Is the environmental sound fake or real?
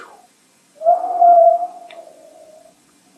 fake